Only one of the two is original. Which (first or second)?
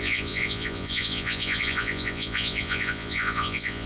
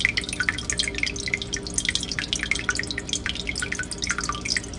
second